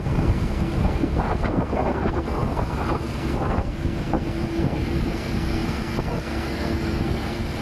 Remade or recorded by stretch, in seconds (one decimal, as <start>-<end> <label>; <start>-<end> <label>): 0.0-7.6 remade